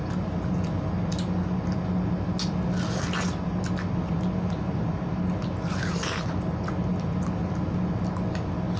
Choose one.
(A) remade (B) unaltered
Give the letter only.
B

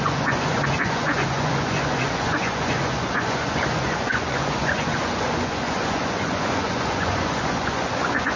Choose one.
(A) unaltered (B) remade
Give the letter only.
B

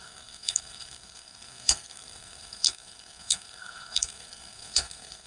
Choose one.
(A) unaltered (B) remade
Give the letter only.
B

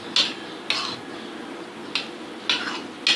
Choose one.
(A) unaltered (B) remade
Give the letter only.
A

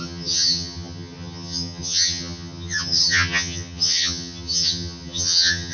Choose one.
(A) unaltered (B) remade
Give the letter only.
B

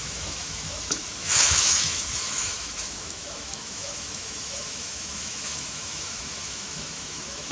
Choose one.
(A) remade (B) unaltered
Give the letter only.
A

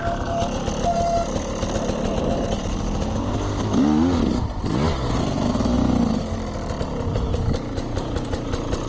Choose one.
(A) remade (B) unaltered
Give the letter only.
B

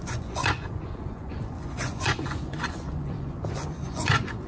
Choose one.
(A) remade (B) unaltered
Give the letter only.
A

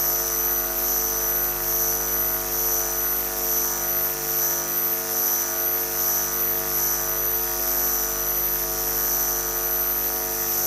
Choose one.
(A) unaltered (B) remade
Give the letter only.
A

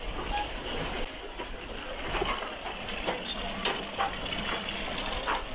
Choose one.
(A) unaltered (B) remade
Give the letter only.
A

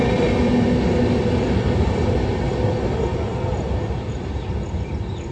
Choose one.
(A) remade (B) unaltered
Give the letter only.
B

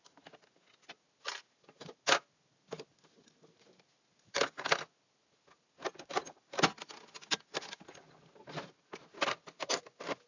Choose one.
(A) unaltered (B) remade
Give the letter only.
A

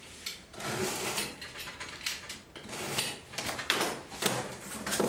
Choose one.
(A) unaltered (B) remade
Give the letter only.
B